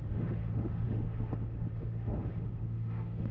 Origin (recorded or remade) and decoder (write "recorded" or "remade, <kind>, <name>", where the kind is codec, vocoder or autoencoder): remade, autoencoder, DAC-VAE